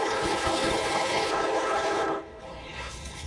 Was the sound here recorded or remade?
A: remade